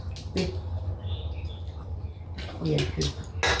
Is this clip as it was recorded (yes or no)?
yes